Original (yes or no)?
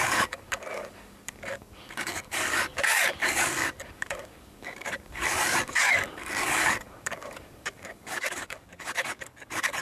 no